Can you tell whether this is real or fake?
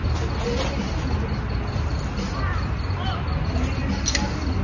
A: real